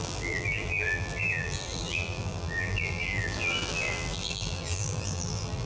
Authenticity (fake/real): fake